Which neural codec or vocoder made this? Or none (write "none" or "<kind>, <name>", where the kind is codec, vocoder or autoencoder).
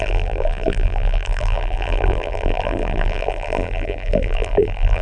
vocoder, BigVGAN v2